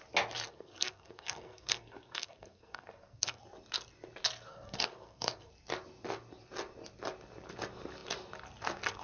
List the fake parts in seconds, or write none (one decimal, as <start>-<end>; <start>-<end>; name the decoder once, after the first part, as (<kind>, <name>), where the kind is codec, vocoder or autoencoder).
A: 0.5-3.4 (codec, SNAC); 4.5-5.5